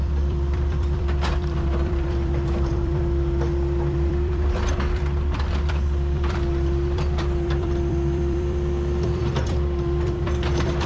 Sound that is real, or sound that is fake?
fake